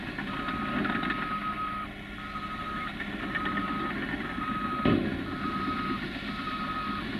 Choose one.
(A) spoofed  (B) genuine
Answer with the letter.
B